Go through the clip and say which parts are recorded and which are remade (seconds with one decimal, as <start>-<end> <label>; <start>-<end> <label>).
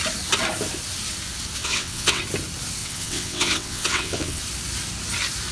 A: 0.0-1.6 recorded; 1.6-2.2 remade; 2.2-2.8 recorded; 2.8-4.4 remade; 4.4-5.5 recorded